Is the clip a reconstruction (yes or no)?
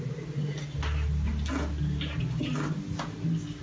no